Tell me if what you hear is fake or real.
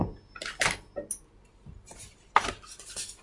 real